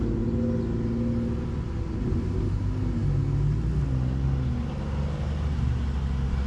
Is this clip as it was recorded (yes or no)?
yes